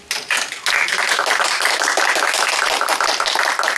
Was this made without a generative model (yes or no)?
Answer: yes